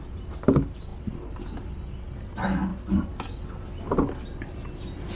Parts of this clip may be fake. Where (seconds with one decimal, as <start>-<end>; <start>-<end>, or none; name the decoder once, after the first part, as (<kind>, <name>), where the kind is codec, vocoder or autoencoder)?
none